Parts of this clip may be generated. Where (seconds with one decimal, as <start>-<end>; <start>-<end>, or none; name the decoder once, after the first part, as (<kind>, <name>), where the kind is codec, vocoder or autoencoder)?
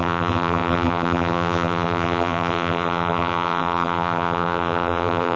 0.0-5.4 (vocoder, BigVGAN v2)